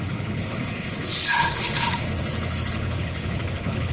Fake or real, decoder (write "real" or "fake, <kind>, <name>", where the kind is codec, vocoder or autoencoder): fake, codec, HILCodec